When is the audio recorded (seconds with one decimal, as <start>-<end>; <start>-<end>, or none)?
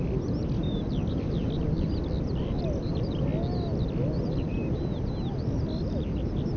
0.0-6.6